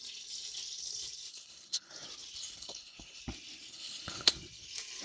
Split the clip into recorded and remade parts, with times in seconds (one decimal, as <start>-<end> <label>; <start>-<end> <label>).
0.0-1.3 recorded; 1.3-1.9 remade; 1.9-2.4 recorded; 2.4-3.2 remade; 3.2-3.7 recorded; 3.7-4.3 remade; 4.3-5.0 recorded